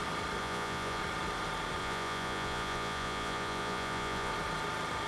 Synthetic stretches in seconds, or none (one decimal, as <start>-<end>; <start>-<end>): 0.4-1.0; 1.8-4.3